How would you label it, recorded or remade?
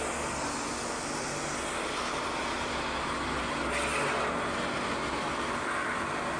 recorded